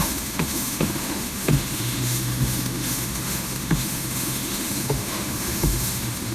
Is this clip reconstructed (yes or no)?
yes